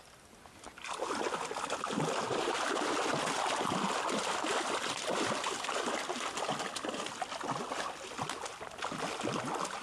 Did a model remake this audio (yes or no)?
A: no